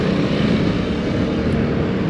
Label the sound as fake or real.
real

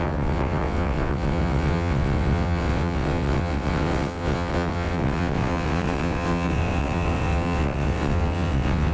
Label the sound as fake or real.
fake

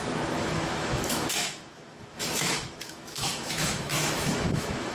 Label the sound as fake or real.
fake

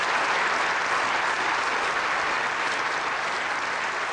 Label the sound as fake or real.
real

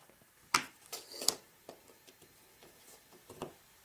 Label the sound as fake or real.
real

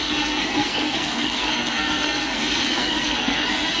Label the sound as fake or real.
fake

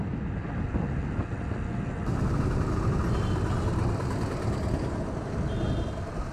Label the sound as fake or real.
real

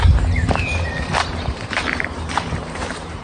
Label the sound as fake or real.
fake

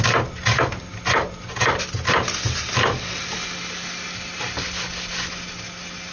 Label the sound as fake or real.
real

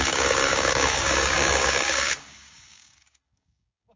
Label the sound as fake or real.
fake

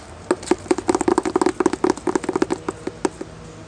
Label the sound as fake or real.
real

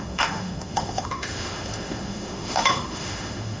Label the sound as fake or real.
fake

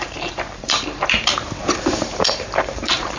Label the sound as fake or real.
fake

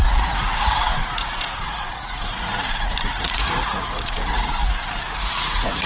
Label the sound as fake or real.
fake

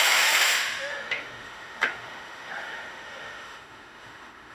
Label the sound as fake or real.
fake